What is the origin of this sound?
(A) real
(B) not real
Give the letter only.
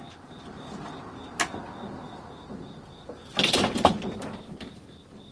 A